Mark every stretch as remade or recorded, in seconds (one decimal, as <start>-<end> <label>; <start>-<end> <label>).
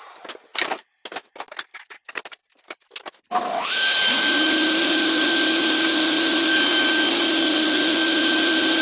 0.0-8.8 recorded